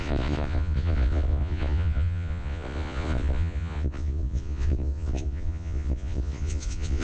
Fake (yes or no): yes